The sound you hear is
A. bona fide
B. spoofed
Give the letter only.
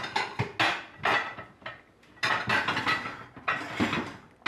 A